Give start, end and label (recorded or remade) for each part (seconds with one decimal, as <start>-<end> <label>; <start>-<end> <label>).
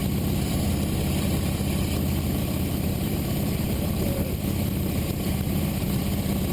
0.0-0.7 remade; 0.7-2.4 recorded; 2.4-6.5 remade